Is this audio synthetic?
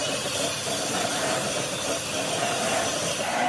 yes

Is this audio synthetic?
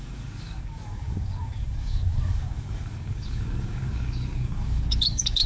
yes